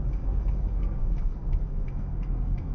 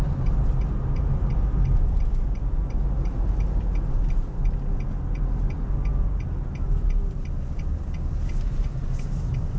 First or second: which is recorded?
second